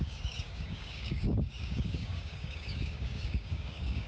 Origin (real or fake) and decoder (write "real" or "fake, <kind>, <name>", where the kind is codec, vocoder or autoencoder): fake, codec, DAC